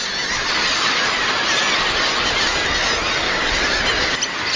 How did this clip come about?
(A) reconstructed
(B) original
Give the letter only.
B